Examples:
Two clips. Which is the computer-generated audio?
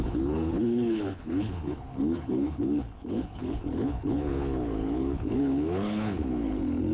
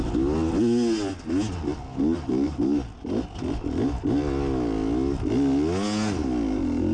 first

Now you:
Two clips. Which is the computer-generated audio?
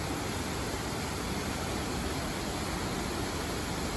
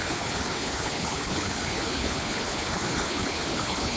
second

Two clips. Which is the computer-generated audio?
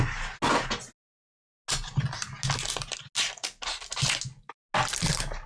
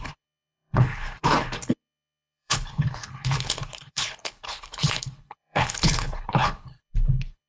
second